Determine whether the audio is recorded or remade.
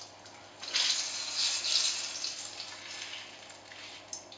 recorded